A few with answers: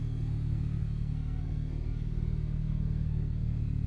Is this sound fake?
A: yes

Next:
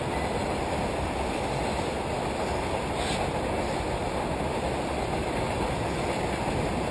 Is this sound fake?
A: no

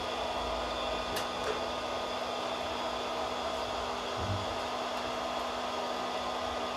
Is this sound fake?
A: no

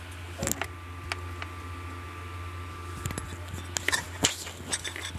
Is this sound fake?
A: no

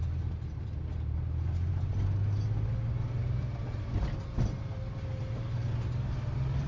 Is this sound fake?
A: no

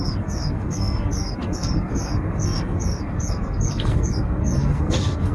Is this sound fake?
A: yes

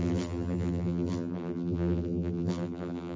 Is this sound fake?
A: yes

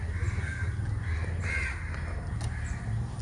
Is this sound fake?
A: no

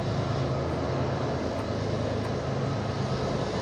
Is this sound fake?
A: no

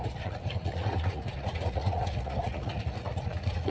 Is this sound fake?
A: yes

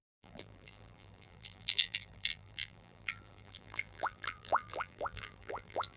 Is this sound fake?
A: yes